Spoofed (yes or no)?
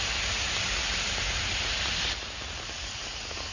no